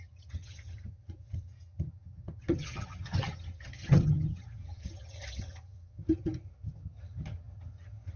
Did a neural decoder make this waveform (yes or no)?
yes